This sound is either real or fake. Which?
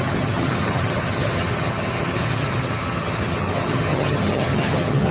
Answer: fake